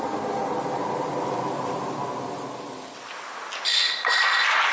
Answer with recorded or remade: recorded